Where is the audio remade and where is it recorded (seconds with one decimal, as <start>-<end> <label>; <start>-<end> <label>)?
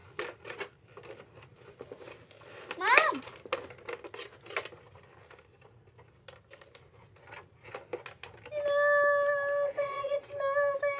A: 0.0-9.7 recorded; 9.7-10.3 remade; 10.3-11.0 recorded